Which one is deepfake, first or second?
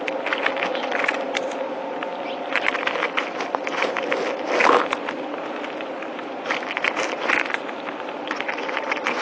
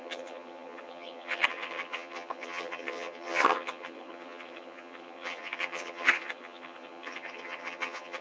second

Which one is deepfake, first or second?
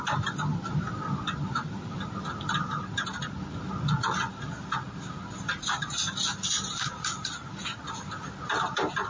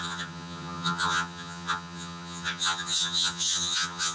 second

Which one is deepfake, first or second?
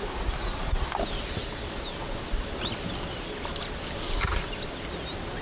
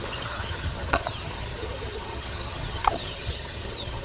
second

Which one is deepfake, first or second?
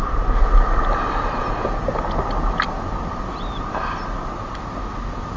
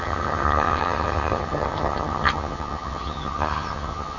second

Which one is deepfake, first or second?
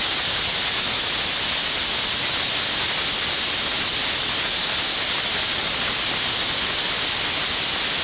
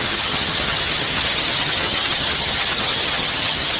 second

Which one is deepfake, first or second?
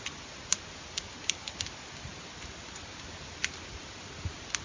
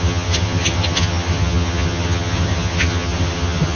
second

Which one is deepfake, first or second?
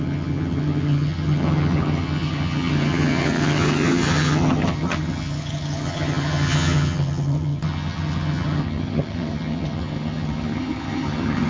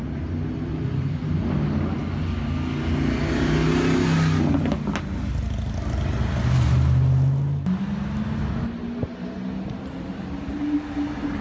first